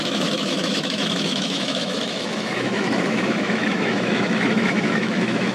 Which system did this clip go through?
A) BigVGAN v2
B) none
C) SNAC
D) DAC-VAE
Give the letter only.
D